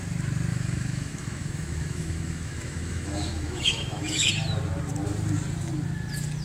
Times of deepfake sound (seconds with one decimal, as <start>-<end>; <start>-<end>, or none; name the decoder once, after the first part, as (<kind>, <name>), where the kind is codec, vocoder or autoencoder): 0.5-4.3 (autoencoder, DAC-VAE)